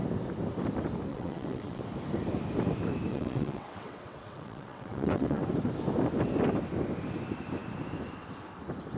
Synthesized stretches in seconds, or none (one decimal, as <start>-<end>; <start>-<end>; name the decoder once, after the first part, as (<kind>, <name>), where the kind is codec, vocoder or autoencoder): 1.1-1.8 (vocoder, WaveNeXt); 3.1-5.4